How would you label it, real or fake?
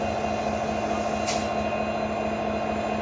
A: real